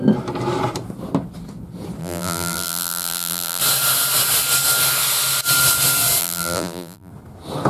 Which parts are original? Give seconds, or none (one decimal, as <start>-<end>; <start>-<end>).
0.0-2.0; 3.6-6.2; 7.1-7.7